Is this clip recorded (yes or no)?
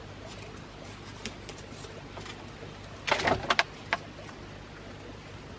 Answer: yes